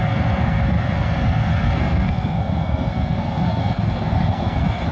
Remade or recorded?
remade